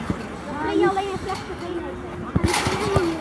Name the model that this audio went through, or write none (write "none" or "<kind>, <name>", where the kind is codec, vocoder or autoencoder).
none